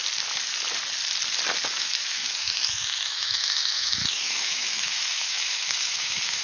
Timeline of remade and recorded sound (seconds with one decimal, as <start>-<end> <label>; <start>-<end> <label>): 0.0-1.7 recorded; 1.7-6.4 remade